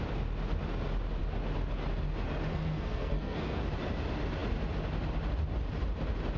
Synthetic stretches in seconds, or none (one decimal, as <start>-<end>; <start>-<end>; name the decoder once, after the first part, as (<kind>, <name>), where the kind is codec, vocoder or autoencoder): 2.5-3.6 (codec, SNAC)